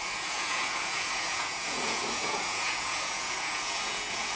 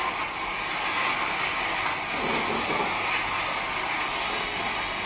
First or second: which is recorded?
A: second